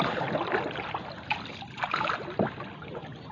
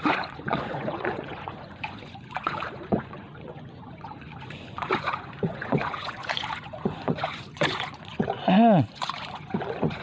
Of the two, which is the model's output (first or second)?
second